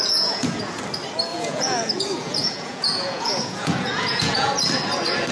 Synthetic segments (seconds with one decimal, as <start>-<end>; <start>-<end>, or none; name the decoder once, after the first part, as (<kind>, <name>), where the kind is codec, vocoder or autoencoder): 0.0-0.8 (vocoder, Vocos); 1.3-4.5